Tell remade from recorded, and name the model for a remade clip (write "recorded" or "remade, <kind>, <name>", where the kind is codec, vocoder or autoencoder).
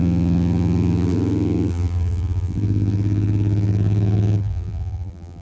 remade, vocoder, BigVGAN v2